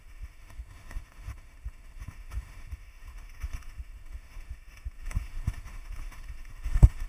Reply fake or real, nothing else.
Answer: fake